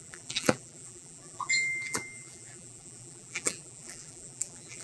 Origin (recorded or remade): remade